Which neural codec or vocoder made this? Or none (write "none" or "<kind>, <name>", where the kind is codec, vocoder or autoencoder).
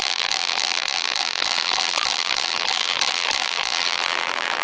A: vocoder, BigVGAN v2